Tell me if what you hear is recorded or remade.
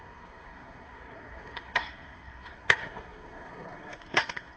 remade